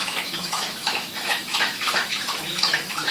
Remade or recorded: remade